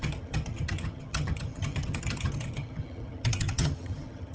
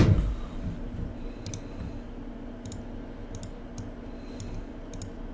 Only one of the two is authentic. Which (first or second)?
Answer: second